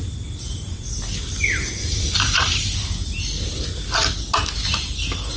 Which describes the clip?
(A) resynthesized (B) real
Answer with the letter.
B